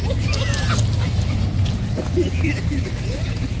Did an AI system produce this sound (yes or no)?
no